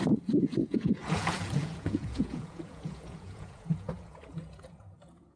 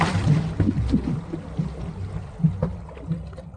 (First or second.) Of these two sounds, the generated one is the first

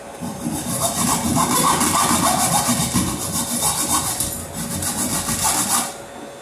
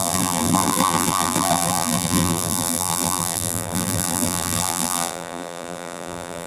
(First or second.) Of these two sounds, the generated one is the second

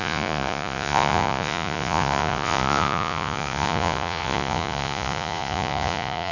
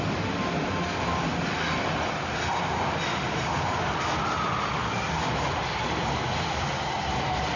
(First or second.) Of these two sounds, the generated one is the first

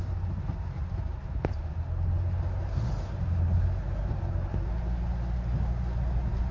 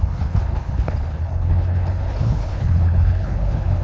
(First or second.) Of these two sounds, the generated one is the second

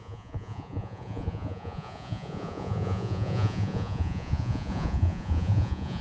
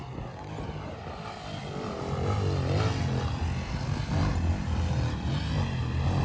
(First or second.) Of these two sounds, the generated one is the first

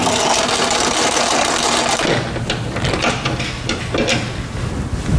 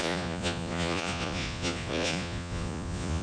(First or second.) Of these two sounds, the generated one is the second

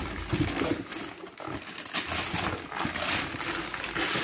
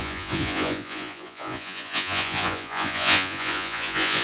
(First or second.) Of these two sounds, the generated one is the second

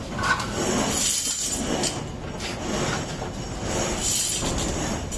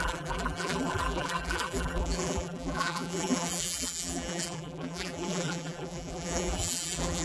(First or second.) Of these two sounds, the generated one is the second